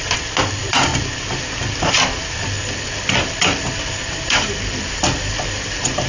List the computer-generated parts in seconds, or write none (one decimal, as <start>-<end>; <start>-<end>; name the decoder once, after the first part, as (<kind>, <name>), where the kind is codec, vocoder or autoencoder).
none